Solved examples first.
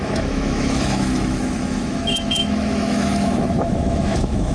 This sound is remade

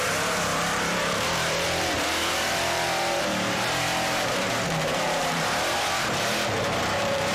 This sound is remade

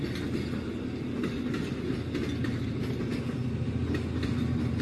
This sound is recorded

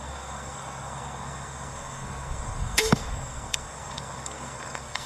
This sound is remade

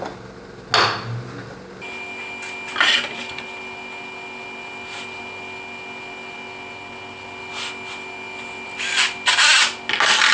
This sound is recorded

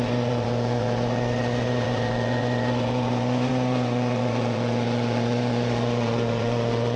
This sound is remade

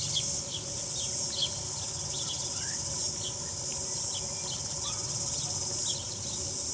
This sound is recorded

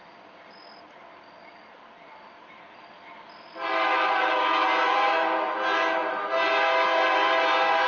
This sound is recorded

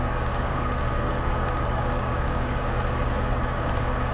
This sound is remade